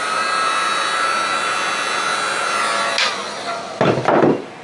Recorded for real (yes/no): yes